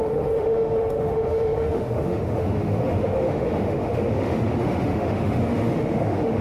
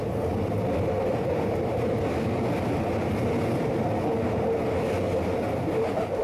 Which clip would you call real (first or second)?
second